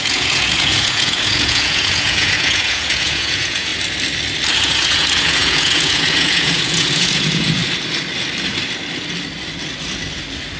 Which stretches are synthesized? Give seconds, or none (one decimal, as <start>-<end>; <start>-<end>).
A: 0.0-3.7; 4.5-7.6